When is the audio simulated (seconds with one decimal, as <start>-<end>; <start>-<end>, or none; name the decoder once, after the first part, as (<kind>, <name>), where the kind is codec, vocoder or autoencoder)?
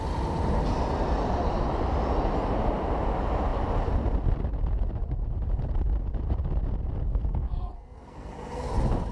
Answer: 7.1-8.7 (codec, SNAC)